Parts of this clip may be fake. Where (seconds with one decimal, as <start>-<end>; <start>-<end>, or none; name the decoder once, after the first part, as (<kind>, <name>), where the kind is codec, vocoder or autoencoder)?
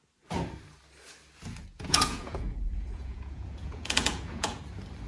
1.7-4.6 (vocoder, Vocos)